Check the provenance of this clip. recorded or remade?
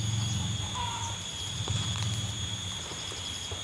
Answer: recorded